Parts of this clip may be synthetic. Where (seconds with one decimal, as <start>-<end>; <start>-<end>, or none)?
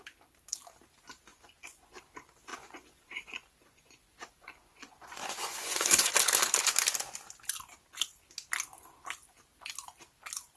1.3-2.0; 2.5-6.1